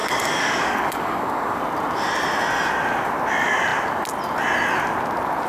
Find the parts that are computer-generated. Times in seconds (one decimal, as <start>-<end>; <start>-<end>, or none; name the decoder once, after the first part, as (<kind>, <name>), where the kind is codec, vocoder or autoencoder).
0.0-1.6 (codec, DAC)